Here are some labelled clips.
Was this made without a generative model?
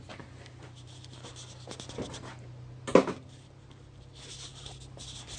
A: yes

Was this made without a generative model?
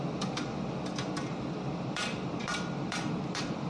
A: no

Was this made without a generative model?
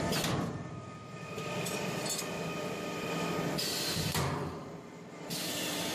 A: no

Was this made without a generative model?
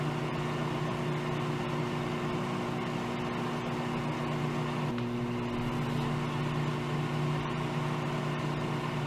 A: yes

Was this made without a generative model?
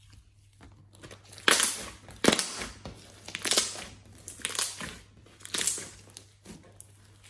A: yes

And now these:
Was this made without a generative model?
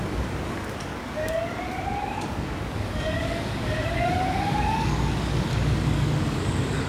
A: no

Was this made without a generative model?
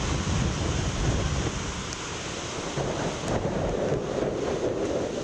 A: yes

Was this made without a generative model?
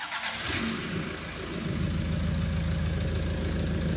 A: yes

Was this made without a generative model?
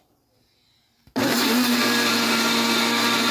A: yes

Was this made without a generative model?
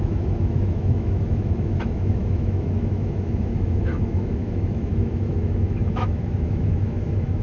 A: no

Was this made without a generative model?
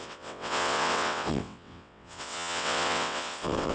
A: no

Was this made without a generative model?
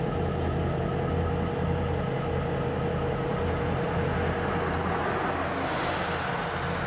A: yes